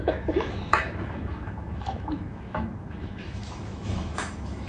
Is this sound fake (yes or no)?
yes